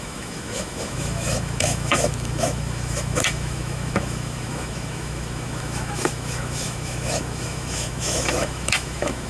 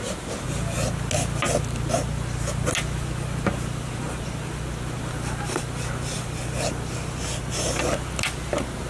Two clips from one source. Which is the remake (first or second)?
first